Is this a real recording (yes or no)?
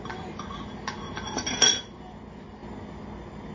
yes